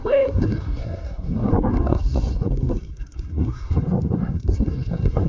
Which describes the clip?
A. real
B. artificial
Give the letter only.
B